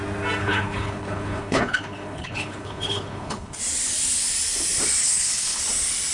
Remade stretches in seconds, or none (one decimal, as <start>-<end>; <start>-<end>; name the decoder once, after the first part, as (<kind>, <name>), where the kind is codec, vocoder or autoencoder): 0.4-3.6 (codec, HILCodec); 5.0-5.6